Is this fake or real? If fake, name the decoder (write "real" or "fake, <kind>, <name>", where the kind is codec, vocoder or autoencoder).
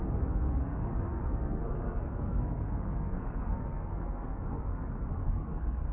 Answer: fake, codec, SNAC